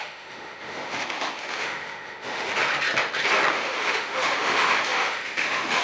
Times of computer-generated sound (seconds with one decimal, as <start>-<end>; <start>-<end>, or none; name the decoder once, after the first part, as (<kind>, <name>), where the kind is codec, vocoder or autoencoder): 0.0-2.5 (autoencoder, DAC-VAE); 3.5-5.8